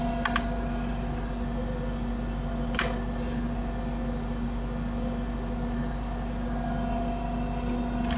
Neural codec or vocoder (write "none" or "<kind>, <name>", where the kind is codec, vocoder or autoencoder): none